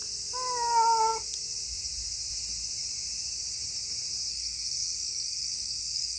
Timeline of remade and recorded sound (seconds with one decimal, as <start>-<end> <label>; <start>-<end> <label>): 0.0-4.3 recorded; 4.3-6.2 remade